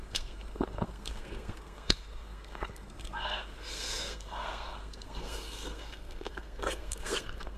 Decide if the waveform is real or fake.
fake